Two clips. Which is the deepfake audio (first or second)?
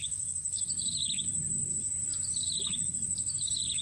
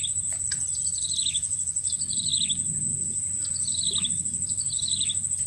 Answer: first